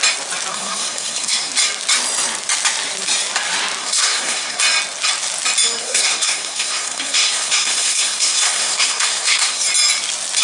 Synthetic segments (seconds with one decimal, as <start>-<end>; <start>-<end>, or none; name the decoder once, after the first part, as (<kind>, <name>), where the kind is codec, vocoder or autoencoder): 0.5-1.5 (codec, SNAC); 3.8-4.6; 5.8-9.6